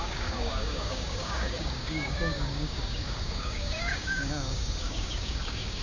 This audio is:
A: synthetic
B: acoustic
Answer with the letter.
A